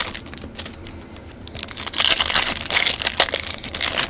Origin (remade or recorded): recorded